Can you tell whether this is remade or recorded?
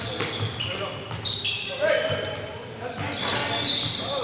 recorded